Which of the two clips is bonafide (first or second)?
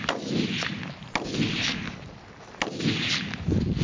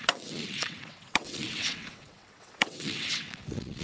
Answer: first